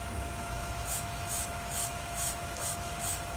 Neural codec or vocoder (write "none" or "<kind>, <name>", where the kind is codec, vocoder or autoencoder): autoencoder, DAC-VAE